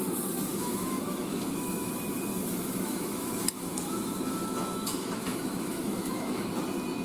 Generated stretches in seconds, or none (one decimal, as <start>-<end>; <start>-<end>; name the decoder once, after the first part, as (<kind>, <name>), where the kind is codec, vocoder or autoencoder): 0.5-1.9 (autoencoder, DAC-VAE); 2.3-6.5

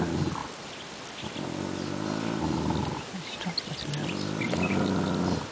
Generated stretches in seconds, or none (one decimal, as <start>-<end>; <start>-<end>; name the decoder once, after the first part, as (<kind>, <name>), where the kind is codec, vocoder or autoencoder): none

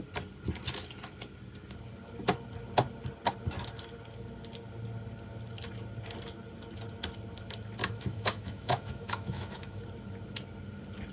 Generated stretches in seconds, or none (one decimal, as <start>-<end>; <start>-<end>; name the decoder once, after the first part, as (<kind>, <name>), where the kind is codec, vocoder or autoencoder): 7.8-9.8 (autoencoder, DAC-VAE)

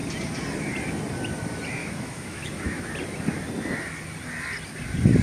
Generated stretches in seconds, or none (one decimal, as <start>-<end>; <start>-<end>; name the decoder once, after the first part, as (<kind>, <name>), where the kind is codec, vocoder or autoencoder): 1.8-2.8 (autoencoder, DAC-VAE)

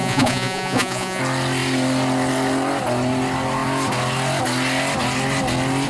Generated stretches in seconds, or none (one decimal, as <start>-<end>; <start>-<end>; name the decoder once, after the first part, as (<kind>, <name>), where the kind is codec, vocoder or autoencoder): 0.0-1.2 (vocoder, Vocos)